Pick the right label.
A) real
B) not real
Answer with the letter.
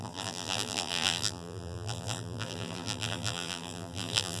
B